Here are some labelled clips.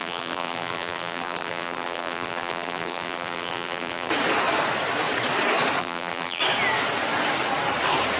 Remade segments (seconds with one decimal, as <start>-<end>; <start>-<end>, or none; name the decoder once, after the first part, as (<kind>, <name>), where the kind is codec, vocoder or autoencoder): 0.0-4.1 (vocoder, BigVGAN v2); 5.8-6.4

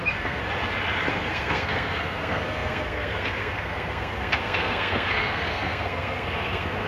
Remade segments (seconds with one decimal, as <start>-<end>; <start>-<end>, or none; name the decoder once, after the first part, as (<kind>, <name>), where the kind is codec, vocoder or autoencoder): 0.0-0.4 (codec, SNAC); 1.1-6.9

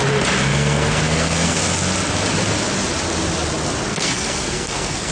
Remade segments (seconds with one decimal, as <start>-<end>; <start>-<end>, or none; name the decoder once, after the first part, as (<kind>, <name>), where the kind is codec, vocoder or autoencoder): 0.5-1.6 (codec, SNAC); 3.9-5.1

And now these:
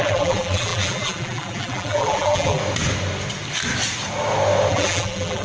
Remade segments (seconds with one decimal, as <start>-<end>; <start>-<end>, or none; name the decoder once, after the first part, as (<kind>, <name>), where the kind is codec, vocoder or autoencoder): 0.0-2.6 (vocoder, BigVGAN v2); 4.7-5.4

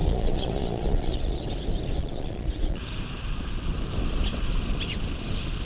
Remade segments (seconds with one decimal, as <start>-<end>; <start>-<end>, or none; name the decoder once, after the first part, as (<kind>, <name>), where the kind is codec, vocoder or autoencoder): 0.0-1.4 (vocoder, Vocos); 2.0-2.8